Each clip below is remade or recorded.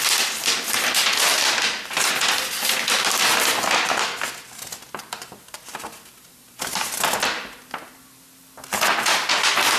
recorded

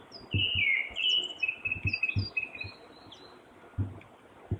recorded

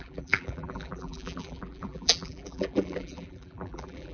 remade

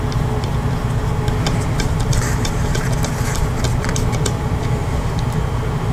remade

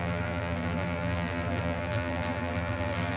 remade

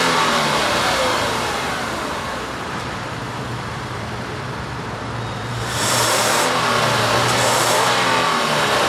remade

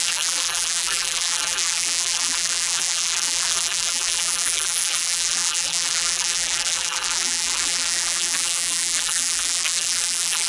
remade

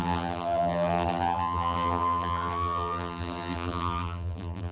remade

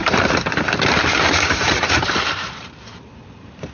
remade